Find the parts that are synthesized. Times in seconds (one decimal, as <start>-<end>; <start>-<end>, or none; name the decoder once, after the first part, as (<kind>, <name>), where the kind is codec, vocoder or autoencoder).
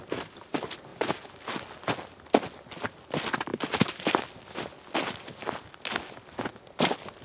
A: none